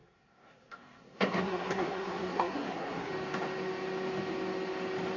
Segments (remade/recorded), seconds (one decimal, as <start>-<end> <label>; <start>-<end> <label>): 0.0-3.1 remade; 3.1-5.2 recorded

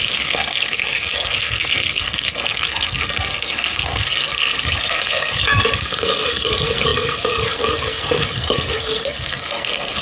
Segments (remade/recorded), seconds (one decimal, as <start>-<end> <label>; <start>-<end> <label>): 0.0-10.0 remade

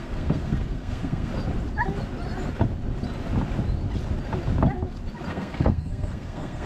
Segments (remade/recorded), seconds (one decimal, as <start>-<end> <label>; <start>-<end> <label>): 0.0-1.3 remade; 1.3-5.3 recorded; 5.3-6.7 remade

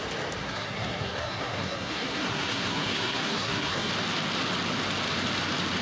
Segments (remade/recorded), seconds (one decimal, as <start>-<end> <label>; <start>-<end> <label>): 0.0-0.4 recorded; 0.4-3.9 remade; 3.9-5.8 recorded

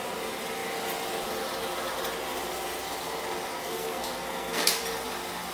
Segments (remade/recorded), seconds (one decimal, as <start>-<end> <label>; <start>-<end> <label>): 0.0-3.6 recorded; 3.6-4.8 remade; 4.8-5.5 recorded

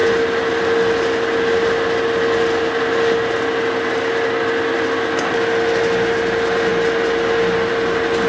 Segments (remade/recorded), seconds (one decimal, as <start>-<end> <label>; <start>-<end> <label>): 0.0-8.3 recorded